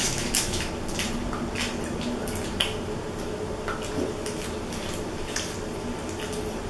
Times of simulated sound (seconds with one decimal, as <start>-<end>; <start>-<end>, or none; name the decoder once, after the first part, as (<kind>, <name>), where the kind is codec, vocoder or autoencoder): 0.0-0.7 (autoencoder, DAC-VAE)

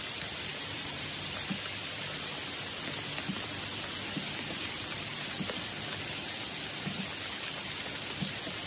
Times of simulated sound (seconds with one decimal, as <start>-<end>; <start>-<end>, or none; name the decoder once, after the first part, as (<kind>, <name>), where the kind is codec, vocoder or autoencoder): 0.5-1.2 (vocoder, BigVGAN v2)

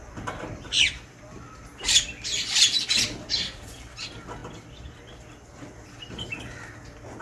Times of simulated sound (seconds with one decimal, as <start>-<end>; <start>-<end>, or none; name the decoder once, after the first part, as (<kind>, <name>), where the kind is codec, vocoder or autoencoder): none

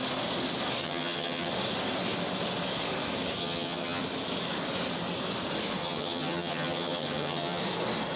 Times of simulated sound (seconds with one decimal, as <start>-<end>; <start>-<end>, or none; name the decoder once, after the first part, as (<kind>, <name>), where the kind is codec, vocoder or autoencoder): 0.8-1.5 (vocoder, HiFi-GAN); 3.4-4.0; 5.8-7.6

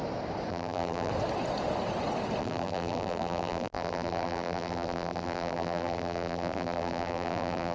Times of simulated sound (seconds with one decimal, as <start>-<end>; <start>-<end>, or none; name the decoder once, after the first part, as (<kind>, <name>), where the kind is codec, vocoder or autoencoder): 0.5-1.1 (vocoder, BigVGAN v2); 2.4-7.7